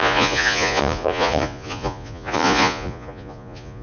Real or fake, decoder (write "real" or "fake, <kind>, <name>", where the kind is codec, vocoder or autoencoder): fake, vocoder, Vocos